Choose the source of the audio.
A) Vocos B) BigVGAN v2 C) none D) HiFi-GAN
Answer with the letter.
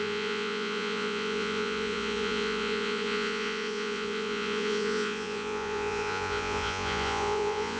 A